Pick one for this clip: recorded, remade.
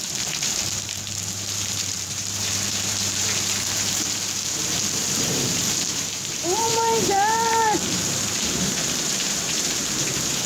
remade